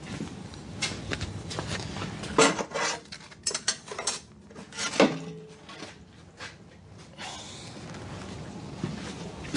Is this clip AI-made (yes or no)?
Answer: no